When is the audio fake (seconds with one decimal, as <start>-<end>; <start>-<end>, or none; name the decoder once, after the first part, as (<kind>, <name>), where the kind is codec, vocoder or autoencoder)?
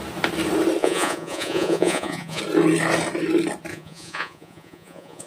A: 0.8-2.4 (vocoder, Vocos); 3.7-5.3